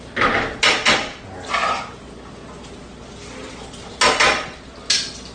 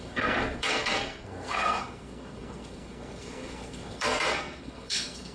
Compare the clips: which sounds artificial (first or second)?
second